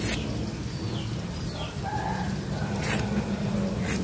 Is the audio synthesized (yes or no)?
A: no